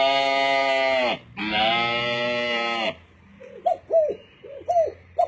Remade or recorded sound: recorded